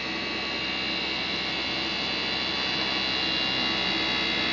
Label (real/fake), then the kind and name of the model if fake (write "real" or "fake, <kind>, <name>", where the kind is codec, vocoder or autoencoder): real